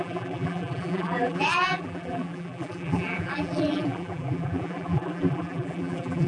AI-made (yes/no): yes